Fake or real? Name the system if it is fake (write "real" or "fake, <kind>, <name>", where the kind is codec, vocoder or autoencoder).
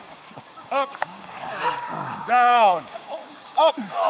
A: fake, codec, DAC